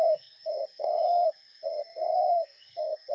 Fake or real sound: fake